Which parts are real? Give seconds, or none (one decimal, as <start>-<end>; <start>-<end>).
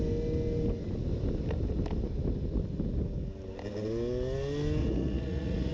0.0-4.8